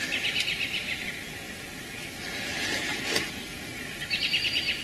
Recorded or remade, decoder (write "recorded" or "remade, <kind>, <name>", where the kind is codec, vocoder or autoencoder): recorded